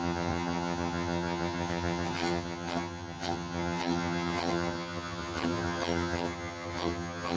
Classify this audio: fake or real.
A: fake